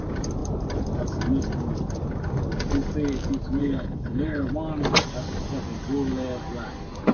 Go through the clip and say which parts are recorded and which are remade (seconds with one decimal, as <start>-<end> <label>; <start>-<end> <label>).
0.0-3.6 recorded; 3.6-4.5 remade; 4.5-7.1 recorded